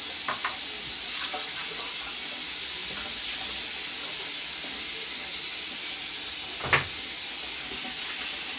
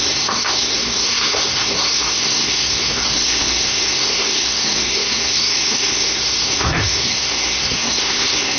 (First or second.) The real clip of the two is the first